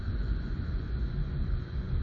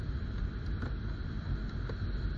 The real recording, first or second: second